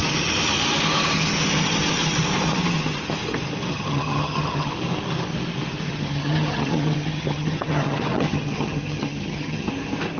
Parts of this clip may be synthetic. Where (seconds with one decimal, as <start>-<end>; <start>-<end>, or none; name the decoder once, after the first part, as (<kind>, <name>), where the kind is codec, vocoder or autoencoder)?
3.7-4.7 (vocoder, HiFi-GAN); 5.9-9.7